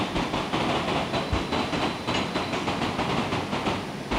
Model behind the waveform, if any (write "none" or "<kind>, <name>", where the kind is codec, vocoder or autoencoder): none